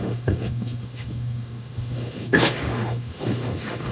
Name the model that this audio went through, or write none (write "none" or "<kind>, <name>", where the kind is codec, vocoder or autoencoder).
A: autoencoder, DAC-VAE